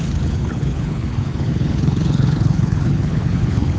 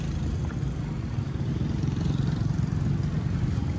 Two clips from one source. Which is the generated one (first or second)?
first